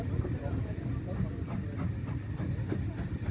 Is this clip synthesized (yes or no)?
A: no